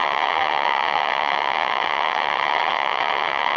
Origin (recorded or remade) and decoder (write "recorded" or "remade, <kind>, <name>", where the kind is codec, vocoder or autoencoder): remade, vocoder, WaveNeXt